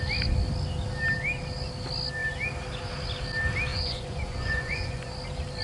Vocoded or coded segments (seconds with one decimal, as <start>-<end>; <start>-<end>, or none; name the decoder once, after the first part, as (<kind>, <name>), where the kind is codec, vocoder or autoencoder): 3.7-5.1 (vocoder, Vocos)